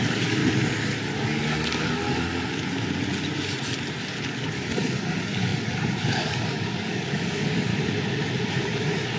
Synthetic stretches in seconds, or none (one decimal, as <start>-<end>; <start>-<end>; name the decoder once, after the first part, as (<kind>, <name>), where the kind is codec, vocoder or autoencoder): 0.0-0.4 (codec, DAC); 1.1-2.3; 4.3-7.7; 8.5-9.2